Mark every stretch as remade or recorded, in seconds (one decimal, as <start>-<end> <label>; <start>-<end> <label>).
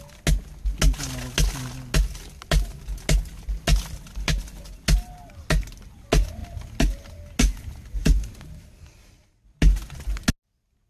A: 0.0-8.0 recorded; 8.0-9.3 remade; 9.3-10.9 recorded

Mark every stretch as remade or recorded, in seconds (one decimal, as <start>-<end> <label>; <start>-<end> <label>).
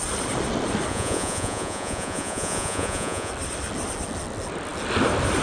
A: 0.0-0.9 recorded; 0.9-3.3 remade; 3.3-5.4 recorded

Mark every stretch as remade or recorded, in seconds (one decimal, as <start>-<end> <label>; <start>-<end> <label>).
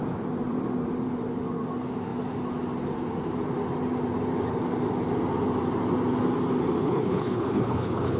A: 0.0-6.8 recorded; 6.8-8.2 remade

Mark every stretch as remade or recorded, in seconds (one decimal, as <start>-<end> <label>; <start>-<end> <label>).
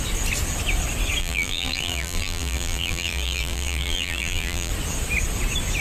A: 0.0-1.2 recorded; 1.2-4.7 remade; 4.7-5.8 recorded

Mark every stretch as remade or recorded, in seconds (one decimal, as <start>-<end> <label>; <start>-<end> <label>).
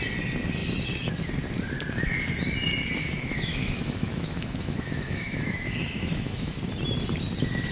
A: 0.0-3.0 recorded; 3.0-6.5 remade; 6.5-7.7 recorded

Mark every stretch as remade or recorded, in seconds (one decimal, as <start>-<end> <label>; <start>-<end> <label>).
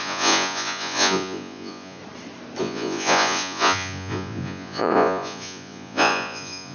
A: 0.0-2.0 remade; 2.0-2.6 recorded; 2.6-6.7 remade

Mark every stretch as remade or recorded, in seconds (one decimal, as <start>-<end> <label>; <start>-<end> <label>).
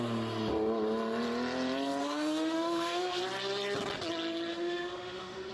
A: 0.0-2.0 recorded; 2.0-3.2 remade; 3.2-4.5 recorded; 4.5-5.5 remade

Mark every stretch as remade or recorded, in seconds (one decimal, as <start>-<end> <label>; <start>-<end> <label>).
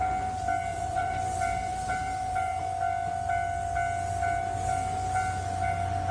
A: 0.0-0.7 recorded; 0.7-1.2 remade; 1.2-1.7 recorded; 1.7-2.6 remade; 2.6-6.1 recorded